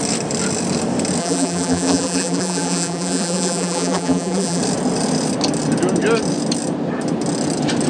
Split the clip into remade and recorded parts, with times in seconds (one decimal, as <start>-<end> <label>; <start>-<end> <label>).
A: 0.0-1.2 recorded; 1.2-4.6 remade; 4.6-7.9 recorded